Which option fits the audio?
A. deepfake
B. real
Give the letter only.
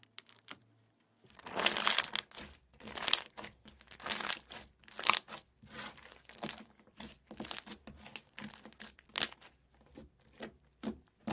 B